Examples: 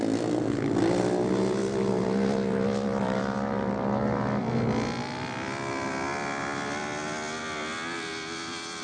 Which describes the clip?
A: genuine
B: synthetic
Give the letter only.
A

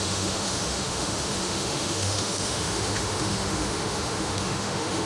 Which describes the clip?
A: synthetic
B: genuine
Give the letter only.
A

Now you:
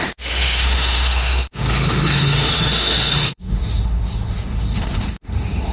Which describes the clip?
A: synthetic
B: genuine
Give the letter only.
A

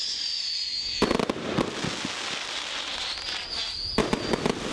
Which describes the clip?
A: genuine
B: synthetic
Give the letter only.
A